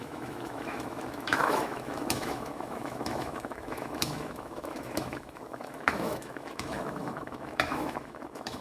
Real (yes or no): no